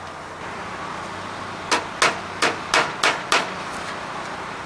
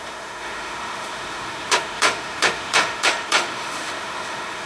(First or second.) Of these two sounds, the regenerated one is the second